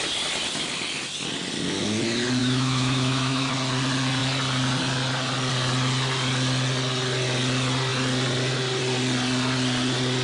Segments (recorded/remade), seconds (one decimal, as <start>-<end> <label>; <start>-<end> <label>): 0.0-2.4 recorded; 2.4-3.5 remade; 3.5-10.2 recorded